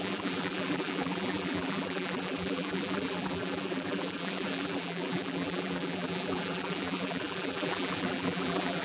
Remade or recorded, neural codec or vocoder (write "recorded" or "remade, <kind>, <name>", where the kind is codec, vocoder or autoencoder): remade, vocoder, BigVGAN v2